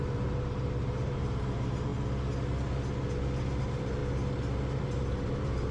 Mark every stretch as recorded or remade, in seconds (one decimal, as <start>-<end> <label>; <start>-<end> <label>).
0.0-1.9 remade; 1.9-3.6 recorded; 3.6-4.0 remade; 4.0-4.8 recorded; 4.8-5.7 remade